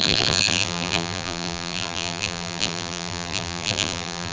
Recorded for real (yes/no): no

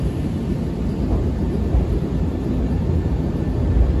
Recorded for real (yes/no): yes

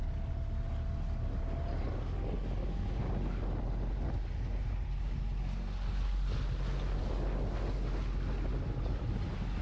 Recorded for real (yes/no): yes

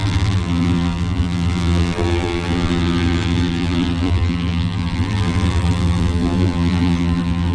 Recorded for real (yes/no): no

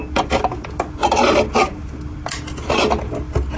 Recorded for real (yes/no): yes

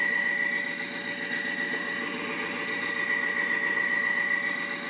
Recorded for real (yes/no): yes